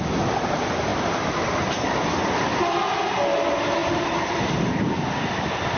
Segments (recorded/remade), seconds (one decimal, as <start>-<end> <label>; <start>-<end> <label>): 0.0-0.9 recorded; 0.9-1.9 remade; 1.9-3.8 recorded; 3.8-4.7 remade; 4.7-5.8 recorded